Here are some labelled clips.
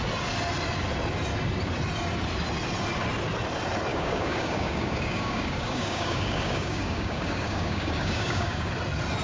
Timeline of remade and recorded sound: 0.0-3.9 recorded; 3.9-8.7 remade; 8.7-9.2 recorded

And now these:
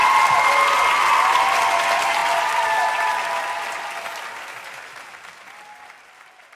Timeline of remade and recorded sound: 0.0-0.5 remade; 0.5-6.6 recorded